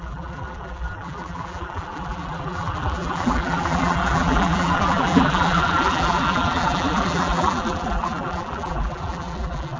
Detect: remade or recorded remade